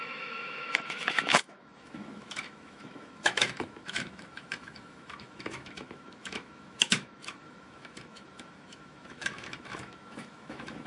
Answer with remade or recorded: remade